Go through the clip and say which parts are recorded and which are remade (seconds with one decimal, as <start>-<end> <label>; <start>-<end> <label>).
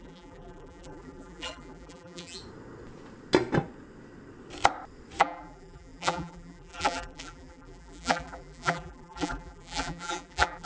0.0-2.4 remade; 2.4-5.2 recorded; 5.2-10.7 remade